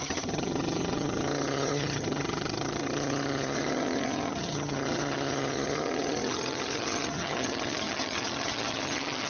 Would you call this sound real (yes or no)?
no